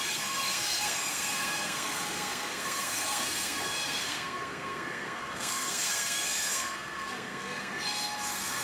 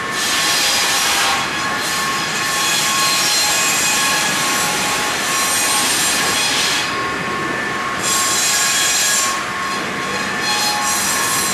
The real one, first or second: second